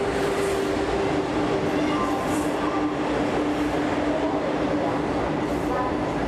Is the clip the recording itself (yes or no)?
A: yes